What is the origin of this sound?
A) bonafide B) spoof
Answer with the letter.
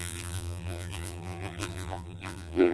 B